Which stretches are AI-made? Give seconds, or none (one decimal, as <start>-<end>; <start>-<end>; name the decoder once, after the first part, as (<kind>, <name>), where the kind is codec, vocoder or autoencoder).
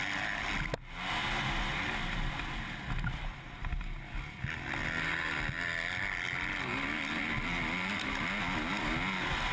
none